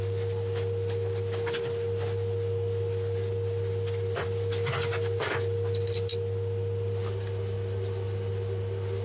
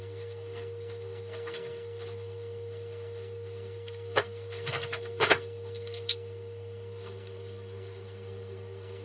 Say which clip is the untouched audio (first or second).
first